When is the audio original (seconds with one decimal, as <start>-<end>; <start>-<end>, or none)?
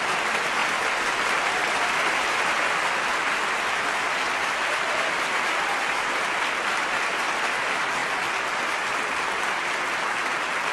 0.0-10.7